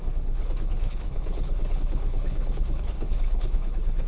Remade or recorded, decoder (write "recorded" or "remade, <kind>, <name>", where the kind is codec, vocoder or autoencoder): remade, codec, HILCodec